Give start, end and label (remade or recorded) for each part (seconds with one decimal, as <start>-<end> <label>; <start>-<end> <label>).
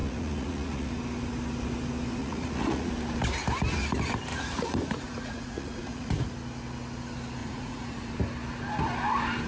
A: 0.0-0.9 remade; 0.9-2.2 recorded; 2.2-2.9 remade; 2.9-4.3 recorded; 4.3-6.1 remade; 6.1-7.4 recorded; 7.4-8.1 remade; 8.1-9.5 recorded